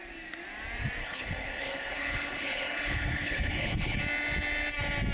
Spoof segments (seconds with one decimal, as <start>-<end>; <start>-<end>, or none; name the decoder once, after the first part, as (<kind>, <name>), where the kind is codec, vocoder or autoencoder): 1.0-4.0 (codec, HILCodec)